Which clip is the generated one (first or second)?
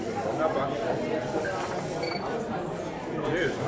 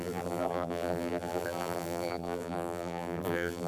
second